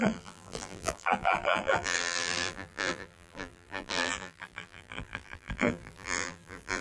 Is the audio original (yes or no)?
no